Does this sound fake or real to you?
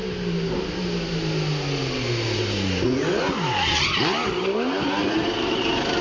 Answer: real